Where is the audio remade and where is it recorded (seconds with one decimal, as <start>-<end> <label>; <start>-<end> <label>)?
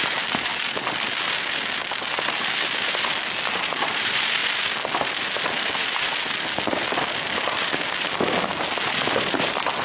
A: 0.0-0.5 remade; 0.5-3.5 recorded; 3.5-4.4 remade; 4.4-8.0 recorded; 8.0-8.5 remade; 8.5-9.1 recorded; 9.1-9.8 remade